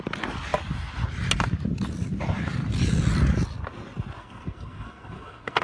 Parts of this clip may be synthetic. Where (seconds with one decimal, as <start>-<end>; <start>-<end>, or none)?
4.2-5.6